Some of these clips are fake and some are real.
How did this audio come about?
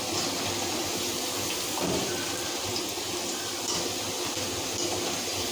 real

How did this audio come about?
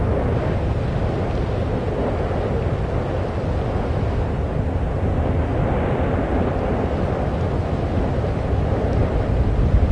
real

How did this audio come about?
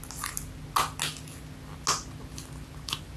real